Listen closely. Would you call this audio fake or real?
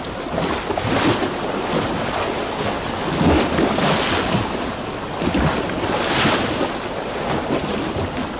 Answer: real